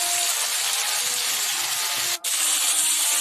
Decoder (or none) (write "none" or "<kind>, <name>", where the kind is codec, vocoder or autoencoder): none